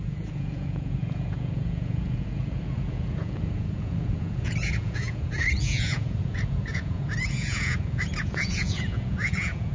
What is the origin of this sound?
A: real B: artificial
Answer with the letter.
B